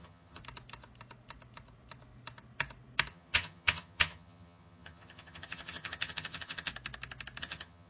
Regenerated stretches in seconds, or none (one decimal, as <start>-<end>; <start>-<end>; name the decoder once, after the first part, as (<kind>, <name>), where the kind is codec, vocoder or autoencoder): 0.0-0.4 (vocoder, HiFi-GAN); 3.1-6.7; 7.4-7.9